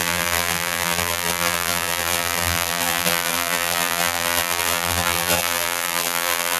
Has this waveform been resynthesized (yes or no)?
yes